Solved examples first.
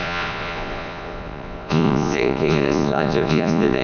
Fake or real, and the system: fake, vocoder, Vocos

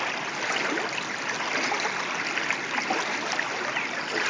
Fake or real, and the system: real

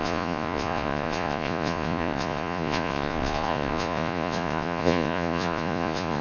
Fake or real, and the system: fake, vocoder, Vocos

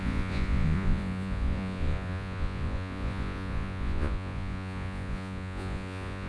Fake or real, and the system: fake, vocoder, Vocos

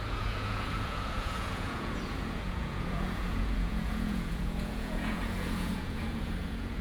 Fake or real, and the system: fake, vocoder, Vocos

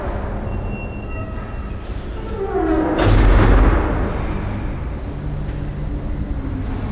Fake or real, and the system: real